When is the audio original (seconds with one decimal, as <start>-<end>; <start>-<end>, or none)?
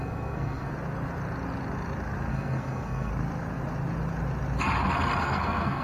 0.7-2.3; 3.1-5.2